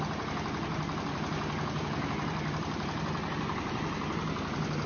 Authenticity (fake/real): real